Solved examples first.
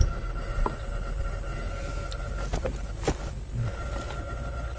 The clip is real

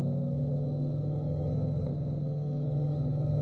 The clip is fake